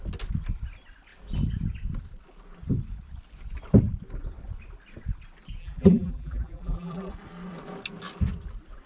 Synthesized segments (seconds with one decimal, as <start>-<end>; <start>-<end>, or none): 5.6-7.1